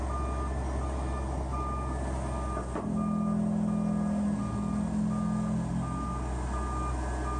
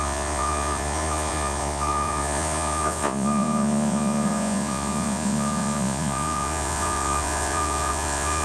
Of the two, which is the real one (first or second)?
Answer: first